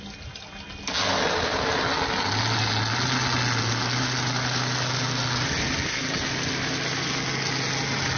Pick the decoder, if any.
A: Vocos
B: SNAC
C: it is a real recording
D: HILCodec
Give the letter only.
C